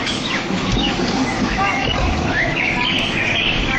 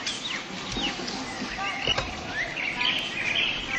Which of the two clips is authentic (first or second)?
second